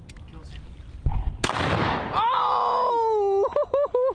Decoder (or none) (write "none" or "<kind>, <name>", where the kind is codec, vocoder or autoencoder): none